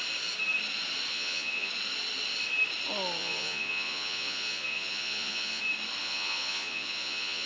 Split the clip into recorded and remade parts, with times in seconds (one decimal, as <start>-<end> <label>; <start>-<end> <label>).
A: 0.0-1.1 recorded; 1.1-1.7 remade; 1.7-3.2 recorded; 3.2-5.6 remade; 5.6-6.0 recorded; 6.0-7.5 remade